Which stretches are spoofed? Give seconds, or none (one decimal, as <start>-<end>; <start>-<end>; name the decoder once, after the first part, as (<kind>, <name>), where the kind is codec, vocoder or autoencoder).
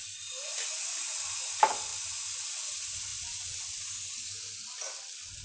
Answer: none